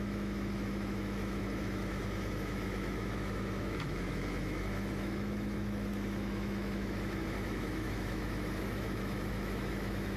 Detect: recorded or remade remade